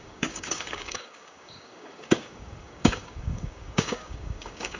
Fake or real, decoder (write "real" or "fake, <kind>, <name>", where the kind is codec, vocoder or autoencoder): fake, codec, DAC